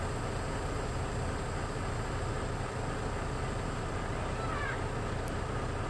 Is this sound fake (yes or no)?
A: no